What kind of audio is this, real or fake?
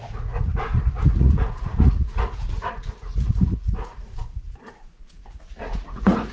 fake